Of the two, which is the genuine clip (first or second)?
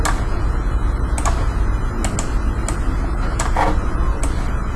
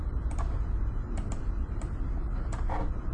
first